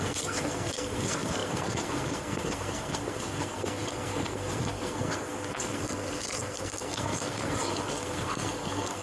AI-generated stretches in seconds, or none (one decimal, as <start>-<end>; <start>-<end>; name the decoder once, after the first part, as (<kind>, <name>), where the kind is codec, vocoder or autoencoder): 0.0-9.0 (codec, SNAC)